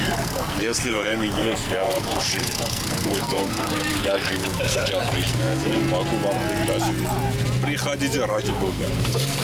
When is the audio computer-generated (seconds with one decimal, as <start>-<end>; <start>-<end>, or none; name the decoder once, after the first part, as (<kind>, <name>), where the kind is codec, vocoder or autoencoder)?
0.0-5.8 (codec, SNAC); 8.3-9.4